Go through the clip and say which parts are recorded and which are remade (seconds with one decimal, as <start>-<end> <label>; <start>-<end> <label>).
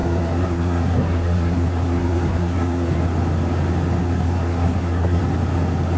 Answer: 0.0-3.0 remade; 3.0-4.0 recorded; 4.0-5.2 remade; 5.2-6.0 recorded